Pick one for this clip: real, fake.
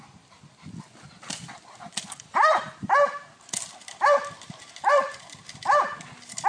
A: real